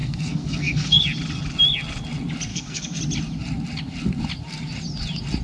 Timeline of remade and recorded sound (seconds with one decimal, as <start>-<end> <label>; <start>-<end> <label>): 0.0-1.0 remade; 1.0-2.5 recorded; 2.5-3.0 remade; 3.0-5.4 recorded